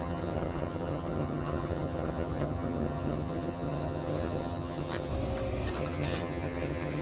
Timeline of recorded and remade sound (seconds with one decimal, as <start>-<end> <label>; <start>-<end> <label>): 0.0-5.1 remade; 5.1-5.8 recorded; 5.8-7.0 remade